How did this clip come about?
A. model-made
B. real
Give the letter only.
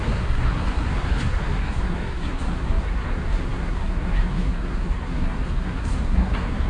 A